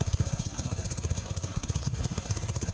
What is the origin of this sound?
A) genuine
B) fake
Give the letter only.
B